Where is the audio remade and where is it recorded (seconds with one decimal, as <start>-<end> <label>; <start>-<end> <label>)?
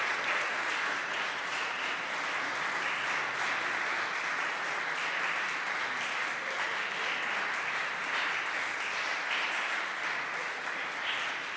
0.0-1.0 recorded; 1.0-1.8 remade; 1.8-11.6 recorded